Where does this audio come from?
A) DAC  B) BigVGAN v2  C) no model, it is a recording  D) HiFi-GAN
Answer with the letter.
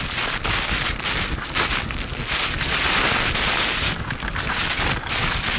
C